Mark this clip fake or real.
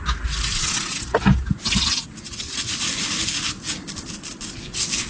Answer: real